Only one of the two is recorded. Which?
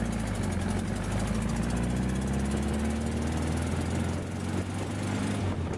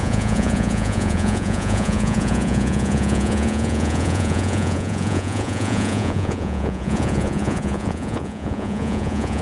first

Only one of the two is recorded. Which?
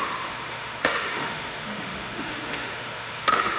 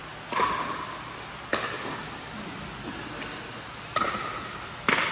second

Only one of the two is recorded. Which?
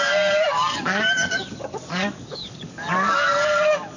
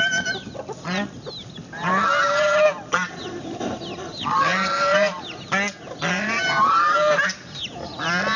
second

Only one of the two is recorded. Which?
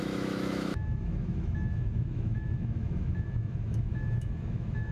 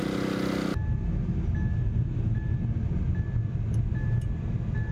second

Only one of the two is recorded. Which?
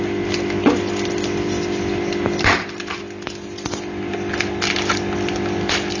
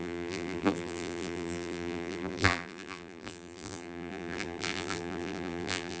first